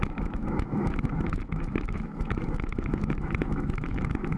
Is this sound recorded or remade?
remade